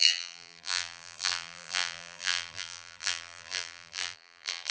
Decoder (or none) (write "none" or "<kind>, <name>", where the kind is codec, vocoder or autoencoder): vocoder, BigVGAN v2